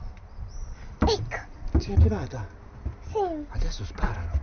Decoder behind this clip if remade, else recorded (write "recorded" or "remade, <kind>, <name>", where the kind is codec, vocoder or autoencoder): recorded